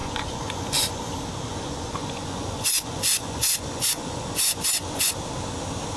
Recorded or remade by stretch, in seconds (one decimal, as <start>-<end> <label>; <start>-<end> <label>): 0.0-1.1 remade; 1.1-1.5 recorded; 1.5-5.1 remade; 5.1-6.0 recorded

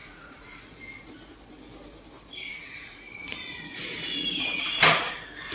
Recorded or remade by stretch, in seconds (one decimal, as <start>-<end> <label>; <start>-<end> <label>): 0.0-0.6 remade; 0.6-2.5 recorded; 2.5-3.8 remade; 3.8-5.5 recorded

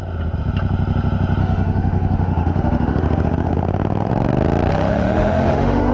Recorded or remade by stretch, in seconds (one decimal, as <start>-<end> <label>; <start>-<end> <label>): 0.0-1.4 recorded; 1.4-4.1 remade; 4.1-4.7 recorded; 4.7-5.9 remade

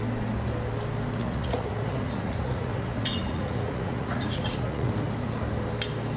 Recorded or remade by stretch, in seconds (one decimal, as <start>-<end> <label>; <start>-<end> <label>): 0.0-1.2 recorded; 1.2-4.9 remade; 4.9-6.2 recorded

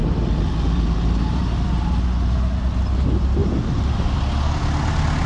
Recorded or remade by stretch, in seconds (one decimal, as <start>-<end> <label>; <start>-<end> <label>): 0.0-1.7 remade; 1.7-3.4 recorded; 3.4-4.1 remade; 4.1-5.3 recorded

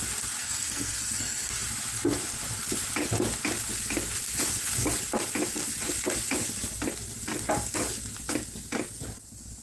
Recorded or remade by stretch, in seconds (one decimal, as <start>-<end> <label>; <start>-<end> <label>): 0.0-0.4 recorded; 0.4-1.5 remade; 1.5-9.6 recorded

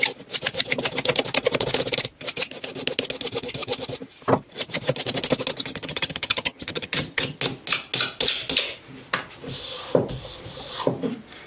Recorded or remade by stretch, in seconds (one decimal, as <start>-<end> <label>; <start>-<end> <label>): 0.0-5.7 recorded; 5.7-7.4 remade; 7.4-11.5 recorded